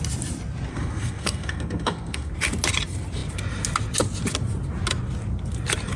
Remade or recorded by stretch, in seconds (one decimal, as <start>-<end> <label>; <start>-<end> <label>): 0.0-0.7 recorded; 0.7-2.3 remade; 2.3-6.0 recorded